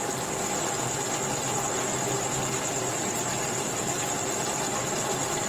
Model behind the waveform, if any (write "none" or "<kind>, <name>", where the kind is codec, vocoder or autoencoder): vocoder, BigVGAN v2